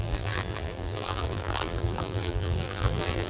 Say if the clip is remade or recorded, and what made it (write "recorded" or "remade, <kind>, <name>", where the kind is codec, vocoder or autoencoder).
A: remade, vocoder, BigVGAN v2